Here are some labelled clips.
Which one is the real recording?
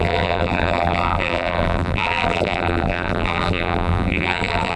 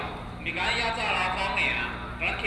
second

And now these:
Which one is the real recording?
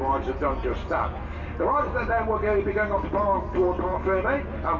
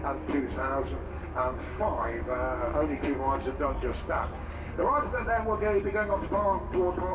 first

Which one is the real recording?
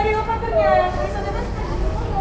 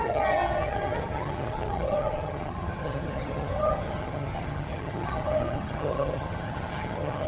first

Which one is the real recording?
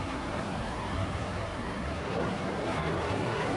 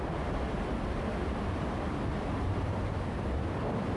second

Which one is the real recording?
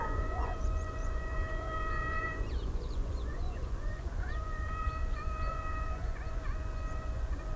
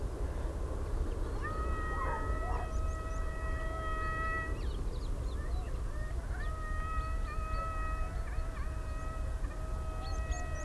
second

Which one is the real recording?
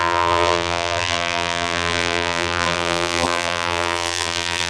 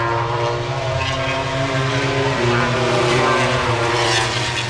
second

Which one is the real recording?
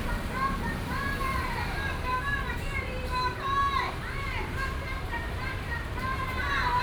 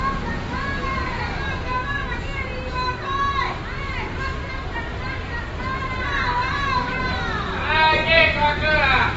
second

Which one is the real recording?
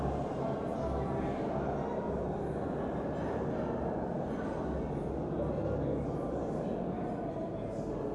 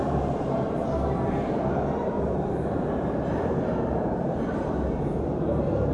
first